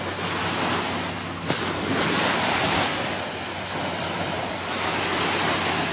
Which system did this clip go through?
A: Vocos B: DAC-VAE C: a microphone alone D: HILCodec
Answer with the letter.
C